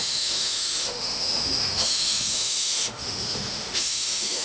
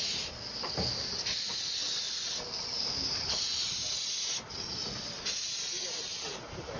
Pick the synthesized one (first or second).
first